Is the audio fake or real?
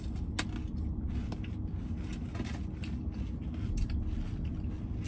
real